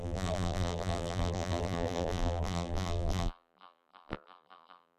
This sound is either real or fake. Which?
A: fake